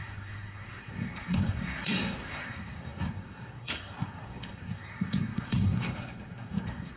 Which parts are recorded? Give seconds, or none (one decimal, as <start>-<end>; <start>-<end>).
none